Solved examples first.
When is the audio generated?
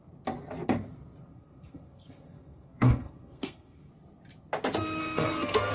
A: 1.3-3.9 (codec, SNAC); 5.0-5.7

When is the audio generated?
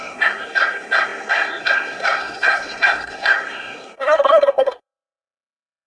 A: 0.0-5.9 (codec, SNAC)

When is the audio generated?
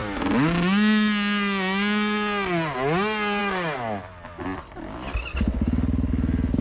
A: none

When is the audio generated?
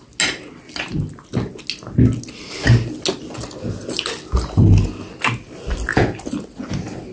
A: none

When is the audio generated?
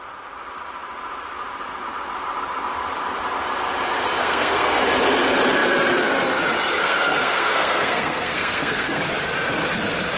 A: 4.2-4.8 (codec, SNAC); 6.8-9.0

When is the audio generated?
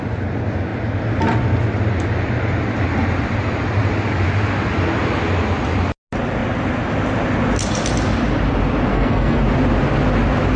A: 8.9-9.4 (codec, SNAC)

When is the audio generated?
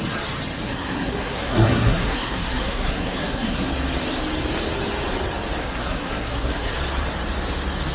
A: 0.6-3.7 (codec, SNAC); 5.6-6.7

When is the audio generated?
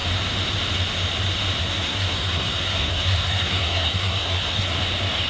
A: 1.6-4.8 (codec, SNAC)